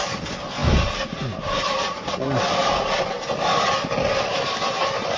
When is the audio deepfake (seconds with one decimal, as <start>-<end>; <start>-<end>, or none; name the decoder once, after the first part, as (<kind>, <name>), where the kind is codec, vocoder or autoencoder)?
none